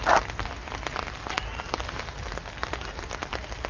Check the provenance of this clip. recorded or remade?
recorded